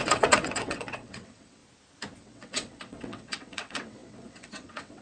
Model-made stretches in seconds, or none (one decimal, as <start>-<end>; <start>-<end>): 0.0-1.6; 2.2-5.0